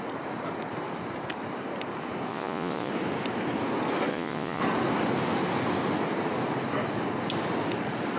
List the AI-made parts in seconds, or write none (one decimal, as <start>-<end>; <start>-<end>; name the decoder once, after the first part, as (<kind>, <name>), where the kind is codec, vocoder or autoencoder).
2.3-2.9 (vocoder, Vocos); 4.1-4.6